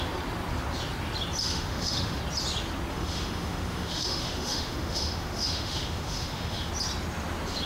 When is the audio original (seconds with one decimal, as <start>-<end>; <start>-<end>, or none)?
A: 0.0-1.4; 2.2-2.9; 6.7-7.7